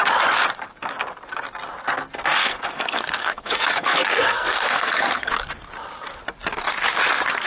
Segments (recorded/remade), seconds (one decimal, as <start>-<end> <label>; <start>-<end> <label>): 0.0-2.4 recorded; 2.4-5.3 remade; 5.3-7.5 recorded